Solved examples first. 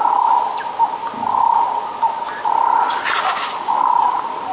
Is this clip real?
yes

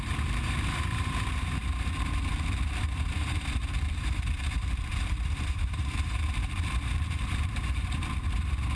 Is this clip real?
no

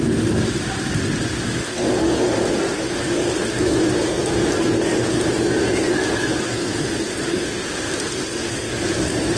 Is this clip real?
yes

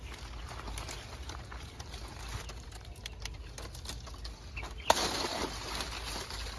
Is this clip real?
yes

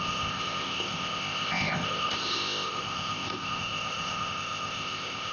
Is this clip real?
no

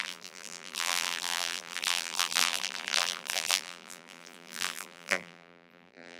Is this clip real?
no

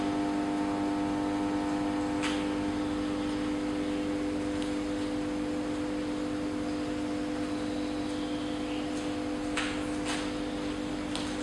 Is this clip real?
yes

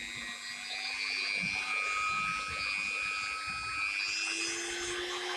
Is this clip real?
yes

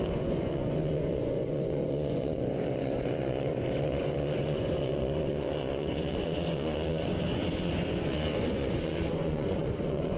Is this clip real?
no